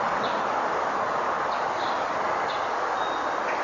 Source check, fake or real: real